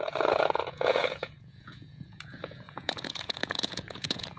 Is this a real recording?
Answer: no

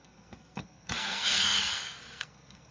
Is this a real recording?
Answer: no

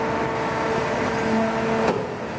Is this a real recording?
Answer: yes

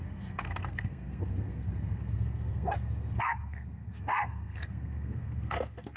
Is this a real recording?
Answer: no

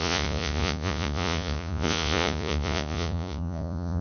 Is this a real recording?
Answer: no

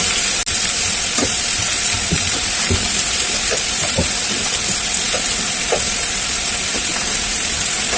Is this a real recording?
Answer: yes